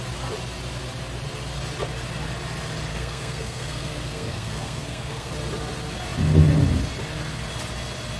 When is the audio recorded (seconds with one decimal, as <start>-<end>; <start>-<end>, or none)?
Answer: 0.0-2.9; 5.3-8.2